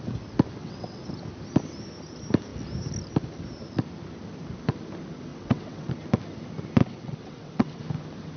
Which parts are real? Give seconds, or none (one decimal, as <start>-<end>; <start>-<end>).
0.0-0.6; 1.1-5.3; 5.9-6.8; 7.8-8.4